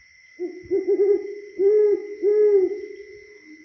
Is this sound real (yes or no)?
yes